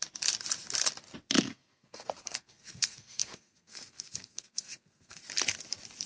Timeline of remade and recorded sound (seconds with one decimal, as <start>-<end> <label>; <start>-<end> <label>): 0.0-1.5 recorded; 1.5-5.2 remade; 5.2-6.1 recorded